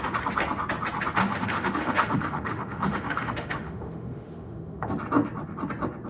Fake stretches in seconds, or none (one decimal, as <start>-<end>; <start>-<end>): 1.2-4.9